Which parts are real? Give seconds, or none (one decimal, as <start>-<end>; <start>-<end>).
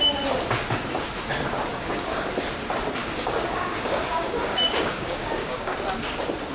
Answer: 0.0-1.7; 2.3-3.0; 5.8-6.5